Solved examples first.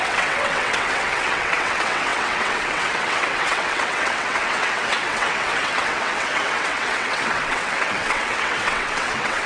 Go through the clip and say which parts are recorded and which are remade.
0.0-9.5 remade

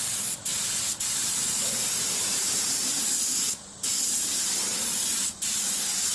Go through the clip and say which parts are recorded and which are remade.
0.0-6.1 recorded

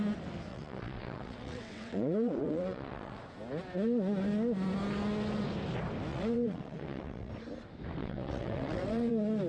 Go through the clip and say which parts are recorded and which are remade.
0.0-0.5 recorded; 0.5-3.2 remade; 3.2-6.1 recorded; 6.1-7.3 remade; 7.3-8.0 recorded; 8.0-9.1 remade; 9.1-9.5 recorded

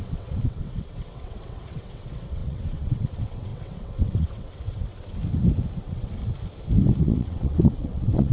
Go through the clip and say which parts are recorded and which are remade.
0.0-5.2 remade; 5.2-5.8 recorded; 5.8-6.2 remade; 6.2-7.0 recorded; 7.0-8.3 remade

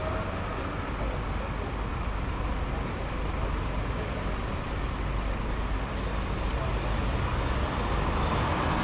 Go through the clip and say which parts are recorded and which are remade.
0.0-8.8 recorded

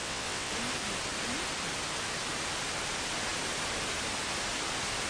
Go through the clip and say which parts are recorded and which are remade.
0.0-0.5 remade; 0.5-5.1 recorded

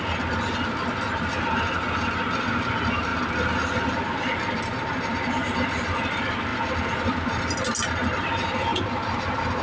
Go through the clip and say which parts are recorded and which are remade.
0.0-9.6 recorded